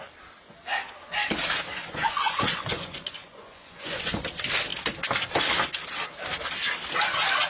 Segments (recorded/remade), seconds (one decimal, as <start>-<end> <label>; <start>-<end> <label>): 0.0-1.7 recorded; 1.7-4.1 remade; 4.1-7.5 recorded